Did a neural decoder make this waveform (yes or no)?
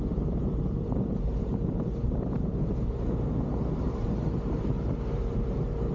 yes